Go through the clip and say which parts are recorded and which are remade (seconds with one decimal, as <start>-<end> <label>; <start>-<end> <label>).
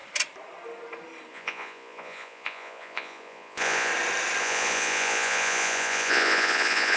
0.0-1.3 recorded; 1.3-3.9 remade; 3.9-4.4 recorded; 4.4-7.0 remade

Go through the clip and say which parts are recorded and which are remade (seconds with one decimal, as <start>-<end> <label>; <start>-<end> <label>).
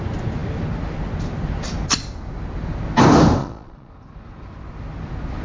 0.0-3.4 recorded; 3.4-3.9 remade; 3.9-5.4 recorded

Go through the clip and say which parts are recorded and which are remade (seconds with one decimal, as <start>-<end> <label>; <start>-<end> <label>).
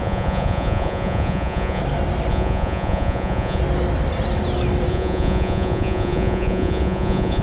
0.0-1.8 remade; 1.8-2.3 recorded; 2.3-3.6 remade; 3.6-4.9 recorded; 4.9-7.4 remade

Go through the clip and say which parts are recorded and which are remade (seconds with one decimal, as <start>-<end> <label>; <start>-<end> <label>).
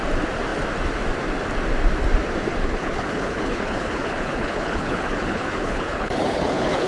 0.0-2.6 recorded; 2.6-6.9 remade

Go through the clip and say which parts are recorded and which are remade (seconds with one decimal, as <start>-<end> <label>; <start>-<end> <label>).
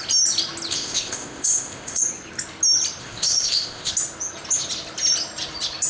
0.0-0.7 recorded; 0.7-2.0 remade; 2.0-3.0 recorded; 3.0-3.9 remade; 3.9-5.9 recorded